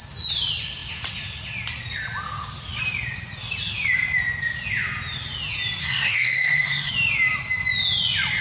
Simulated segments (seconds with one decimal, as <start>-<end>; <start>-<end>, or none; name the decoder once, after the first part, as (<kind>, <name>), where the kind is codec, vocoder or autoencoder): 5.8-6.9 (codec, SNAC)